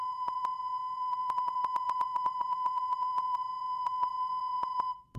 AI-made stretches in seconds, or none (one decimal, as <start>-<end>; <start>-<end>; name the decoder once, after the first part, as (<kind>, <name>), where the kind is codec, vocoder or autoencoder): 0.0-5.2 (vocoder, Vocos)